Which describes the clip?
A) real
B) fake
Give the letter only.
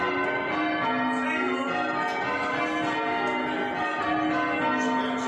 A